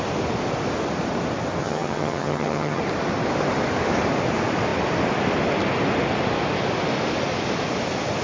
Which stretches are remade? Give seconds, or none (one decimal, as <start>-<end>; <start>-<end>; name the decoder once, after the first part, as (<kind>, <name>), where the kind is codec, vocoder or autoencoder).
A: 1.6-2.8 (vocoder, HiFi-GAN)